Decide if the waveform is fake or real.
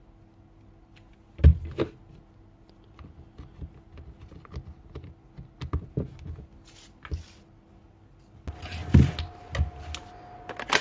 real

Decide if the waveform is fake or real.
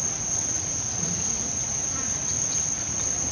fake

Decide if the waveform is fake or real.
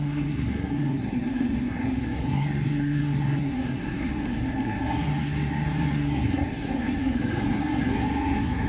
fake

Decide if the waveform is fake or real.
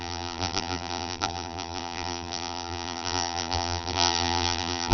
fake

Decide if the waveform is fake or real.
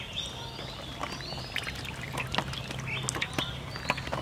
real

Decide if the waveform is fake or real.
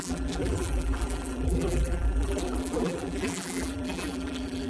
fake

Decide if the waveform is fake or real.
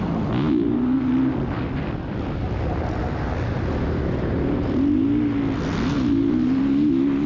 real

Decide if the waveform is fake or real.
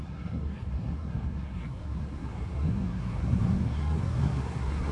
fake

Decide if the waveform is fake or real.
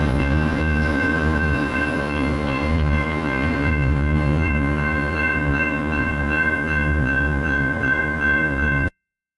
fake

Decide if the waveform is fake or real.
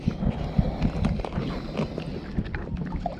real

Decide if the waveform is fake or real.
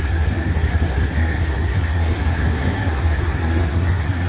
fake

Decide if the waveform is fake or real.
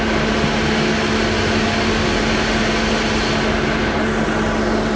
real